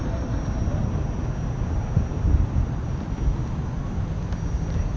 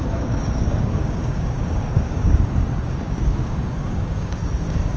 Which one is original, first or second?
first